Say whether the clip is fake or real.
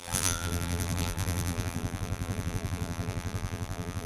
fake